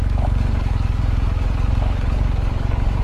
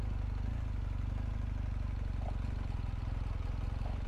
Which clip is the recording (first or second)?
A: second